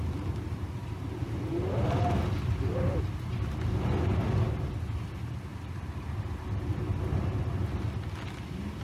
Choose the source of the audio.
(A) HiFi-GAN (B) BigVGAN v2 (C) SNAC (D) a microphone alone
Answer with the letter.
D